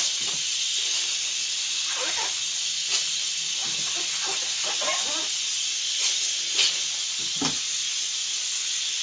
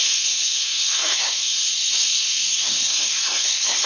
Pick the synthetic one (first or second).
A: second